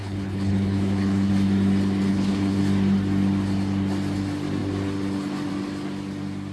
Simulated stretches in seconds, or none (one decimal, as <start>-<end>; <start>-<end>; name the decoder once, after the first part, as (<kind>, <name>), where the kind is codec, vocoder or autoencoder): 0.0-1.3 (codec, HILCodec); 2.1-2.6